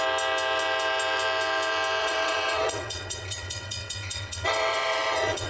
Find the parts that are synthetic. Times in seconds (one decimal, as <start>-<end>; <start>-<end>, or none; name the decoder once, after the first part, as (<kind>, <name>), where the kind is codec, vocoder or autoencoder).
2.0-5.5 (vocoder, WaveNeXt)